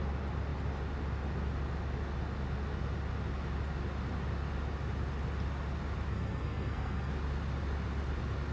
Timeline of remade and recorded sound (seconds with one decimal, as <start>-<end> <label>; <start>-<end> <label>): 0.0-6.1 recorded; 6.1-7.1 remade; 7.1-8.5 recorded